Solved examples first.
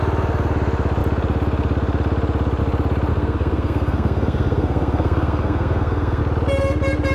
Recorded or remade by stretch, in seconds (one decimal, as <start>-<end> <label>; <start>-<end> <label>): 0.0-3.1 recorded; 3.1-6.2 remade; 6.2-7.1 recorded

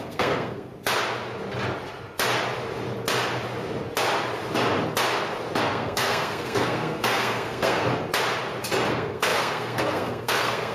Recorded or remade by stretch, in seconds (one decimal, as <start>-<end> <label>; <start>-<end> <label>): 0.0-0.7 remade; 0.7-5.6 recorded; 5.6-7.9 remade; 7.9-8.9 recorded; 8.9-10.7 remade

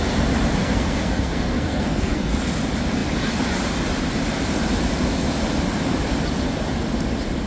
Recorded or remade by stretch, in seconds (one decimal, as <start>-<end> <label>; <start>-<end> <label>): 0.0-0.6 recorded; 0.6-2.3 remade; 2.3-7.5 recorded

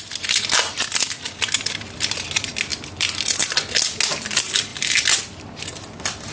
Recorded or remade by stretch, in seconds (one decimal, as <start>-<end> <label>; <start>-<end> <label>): 0.0-6.3 recorded

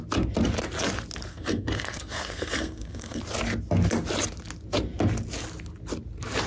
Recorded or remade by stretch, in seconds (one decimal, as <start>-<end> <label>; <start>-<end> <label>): 0.0-1.3 recorded; 1.3-3.2 remade; 3.2-6.5 recorded